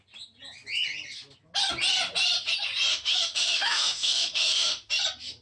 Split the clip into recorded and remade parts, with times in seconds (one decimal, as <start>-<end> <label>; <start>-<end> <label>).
0.0-2.9 recorded; 2.9-4.9 remade; 4.9-5.4 recorded